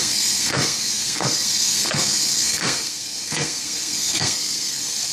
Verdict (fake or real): fake